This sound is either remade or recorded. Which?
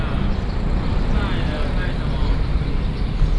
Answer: recorded